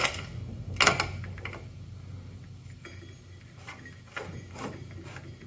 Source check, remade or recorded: recorded